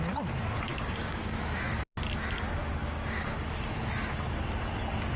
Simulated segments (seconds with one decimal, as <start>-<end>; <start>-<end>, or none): 0.7-1.4; 2.8-3.4